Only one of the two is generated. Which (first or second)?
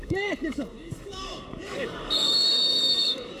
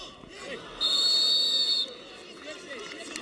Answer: first